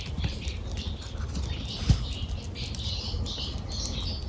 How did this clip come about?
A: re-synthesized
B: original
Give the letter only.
B